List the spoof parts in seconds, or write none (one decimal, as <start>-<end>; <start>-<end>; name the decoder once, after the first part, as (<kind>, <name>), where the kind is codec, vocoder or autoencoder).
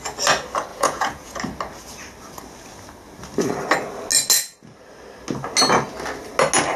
0.7-1.4 (vocoder, Vocos)